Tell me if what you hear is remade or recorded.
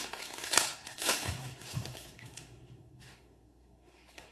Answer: remade